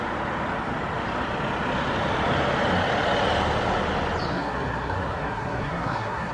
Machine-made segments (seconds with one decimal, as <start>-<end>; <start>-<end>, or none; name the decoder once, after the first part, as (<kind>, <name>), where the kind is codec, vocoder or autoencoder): 4.3-6.3 (codec, SNAC)